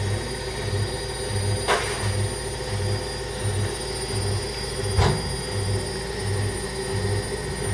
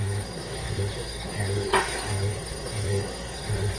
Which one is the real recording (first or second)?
first